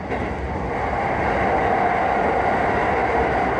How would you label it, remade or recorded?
recorded